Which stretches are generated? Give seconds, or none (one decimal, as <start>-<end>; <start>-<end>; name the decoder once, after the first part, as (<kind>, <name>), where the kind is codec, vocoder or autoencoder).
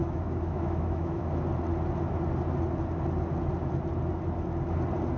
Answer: 0.0-1.3 (autoencoder, DAC-VAE)